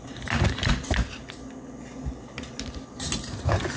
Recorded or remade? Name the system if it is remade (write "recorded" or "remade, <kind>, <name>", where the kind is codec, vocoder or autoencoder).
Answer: recorded